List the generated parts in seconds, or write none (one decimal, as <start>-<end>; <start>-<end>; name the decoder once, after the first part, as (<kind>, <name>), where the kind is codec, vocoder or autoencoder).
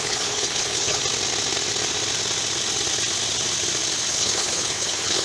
0.0-1.0 (codec, HILCodec); 4.1-5.2